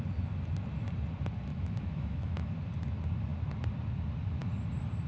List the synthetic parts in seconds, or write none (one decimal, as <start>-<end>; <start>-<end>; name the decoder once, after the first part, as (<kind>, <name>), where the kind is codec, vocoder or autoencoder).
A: 1.5-2.5 (autoencoder, DAC-VAE)